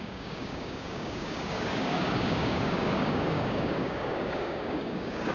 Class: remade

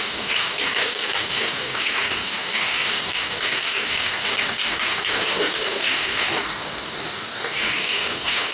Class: remade